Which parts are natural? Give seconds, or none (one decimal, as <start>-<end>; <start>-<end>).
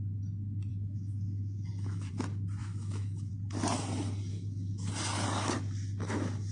0.0-0.7; 2.1-2.6; 3.3-4.3; 4.9-6.5